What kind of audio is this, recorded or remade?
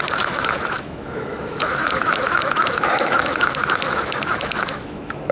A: remade